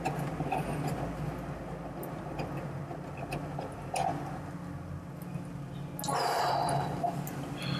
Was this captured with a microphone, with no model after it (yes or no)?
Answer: yes